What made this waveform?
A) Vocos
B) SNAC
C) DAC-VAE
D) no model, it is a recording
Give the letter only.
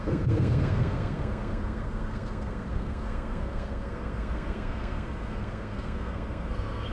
B